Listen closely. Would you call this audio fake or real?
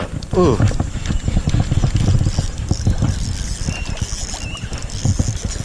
real